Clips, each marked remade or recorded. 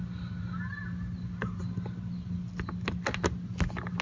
recorded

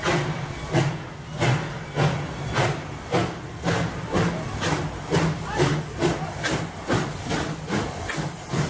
recorded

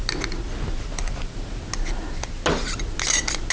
recorded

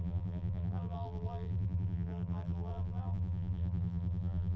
remade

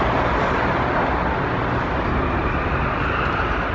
recorded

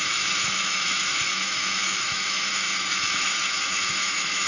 remade